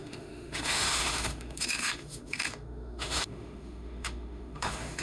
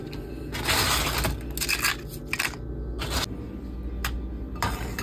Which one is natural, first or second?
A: second